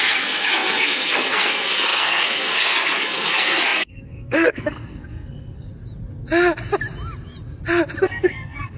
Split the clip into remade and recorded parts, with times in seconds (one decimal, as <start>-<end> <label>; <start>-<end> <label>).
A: 0.0-5.7 remade; 5.7-8.0 recorded; 8.0-8.8 remade